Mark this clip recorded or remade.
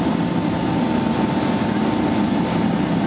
recorded